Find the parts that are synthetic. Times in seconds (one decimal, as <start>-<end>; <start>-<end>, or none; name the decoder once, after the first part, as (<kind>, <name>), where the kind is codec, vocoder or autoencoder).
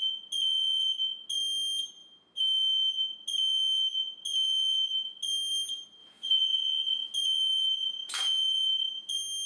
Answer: 6.0-7.1 (vocoder, Vocos)